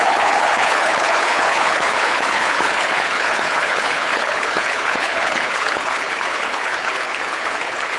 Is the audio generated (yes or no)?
yes